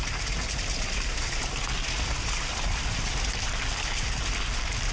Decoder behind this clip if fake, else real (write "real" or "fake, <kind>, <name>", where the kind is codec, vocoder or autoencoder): real